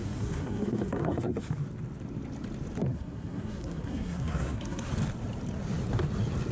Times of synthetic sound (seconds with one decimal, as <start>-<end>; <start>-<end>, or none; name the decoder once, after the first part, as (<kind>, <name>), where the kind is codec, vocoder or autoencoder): 0.0-1.4 (codec, SNAC); 2.9-4.9